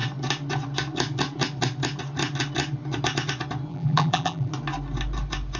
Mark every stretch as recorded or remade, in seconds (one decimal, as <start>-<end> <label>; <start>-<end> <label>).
0.0-3.7 recorded; 3.7-4.5 remade; 4.5-5.6 recorded